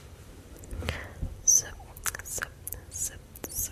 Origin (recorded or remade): remade